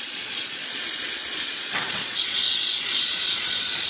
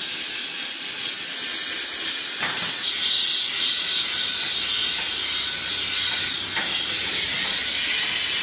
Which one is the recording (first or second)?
second